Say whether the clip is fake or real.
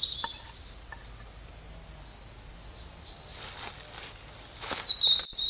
real